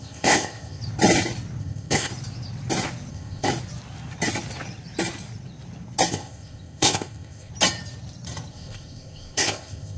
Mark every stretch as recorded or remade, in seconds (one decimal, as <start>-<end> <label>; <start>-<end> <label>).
0.0-0.8 remade; 0.8-1.6 recorded; 1.6-2.1 remade; 2.1-3.1 recorded; 3.1-3.5 remade; 3.5-6.1 recorded; 6.1-7.5 remade; 7.5-8.5 recorded; 8.5-10.0 remade